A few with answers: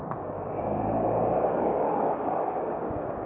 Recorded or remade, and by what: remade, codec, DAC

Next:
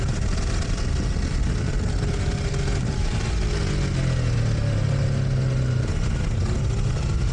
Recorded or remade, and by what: recorded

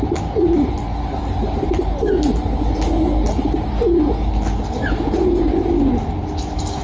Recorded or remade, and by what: recorded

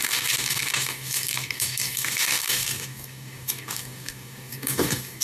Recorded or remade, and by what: remade, codec, DAC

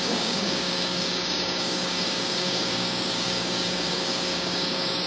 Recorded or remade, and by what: remade, codec, DAC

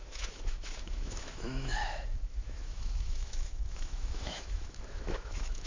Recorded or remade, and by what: remade, autoencoder, DAC-VAE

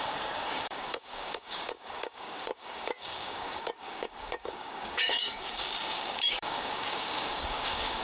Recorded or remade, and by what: remade, codec, DAC